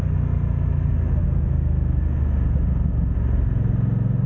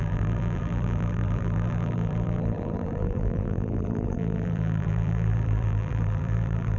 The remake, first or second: second